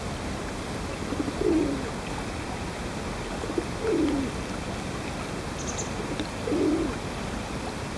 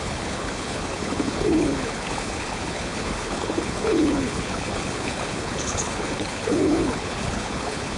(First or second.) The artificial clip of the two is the second